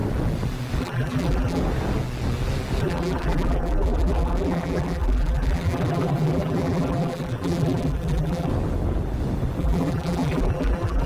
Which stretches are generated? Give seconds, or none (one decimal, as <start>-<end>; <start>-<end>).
0.8-1.6; 2.8-8.5; 9.6-11.1